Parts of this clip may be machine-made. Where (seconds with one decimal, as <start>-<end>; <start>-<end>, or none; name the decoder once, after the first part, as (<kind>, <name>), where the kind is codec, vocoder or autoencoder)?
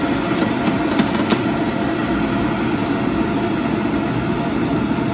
none